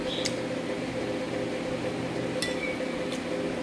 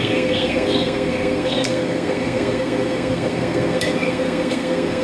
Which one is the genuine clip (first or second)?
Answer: first